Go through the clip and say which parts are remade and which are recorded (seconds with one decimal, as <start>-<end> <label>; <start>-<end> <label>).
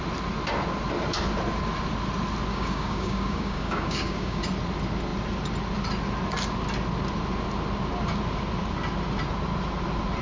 0.0-2.5 recorded; 2.5-4.4 remade; 4.4-10.2 recorded